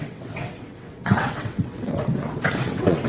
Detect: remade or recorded remade